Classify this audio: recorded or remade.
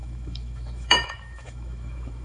remade